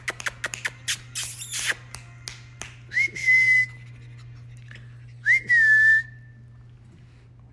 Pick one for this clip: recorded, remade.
recorded